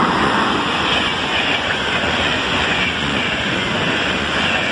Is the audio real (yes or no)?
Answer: no